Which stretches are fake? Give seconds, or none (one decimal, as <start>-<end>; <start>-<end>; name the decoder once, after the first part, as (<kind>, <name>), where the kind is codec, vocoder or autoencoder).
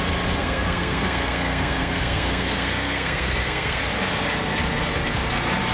0.4-3.8 (codec, SNAC)